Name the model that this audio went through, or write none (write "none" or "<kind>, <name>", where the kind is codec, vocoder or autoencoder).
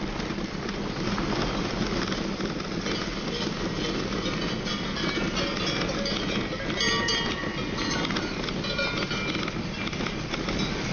none